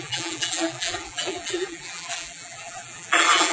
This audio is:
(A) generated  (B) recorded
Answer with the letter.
A